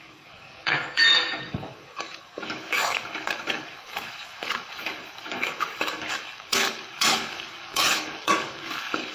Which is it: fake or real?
fake